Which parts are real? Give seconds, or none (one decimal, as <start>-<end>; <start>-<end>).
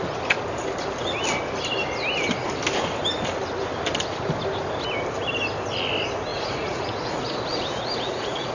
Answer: 0.0-6.3